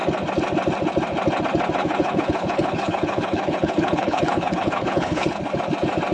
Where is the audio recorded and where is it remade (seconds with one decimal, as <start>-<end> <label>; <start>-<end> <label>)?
0.0-1.8 recorded; 1.8-5.5 remade; 5.5-6.1 recorded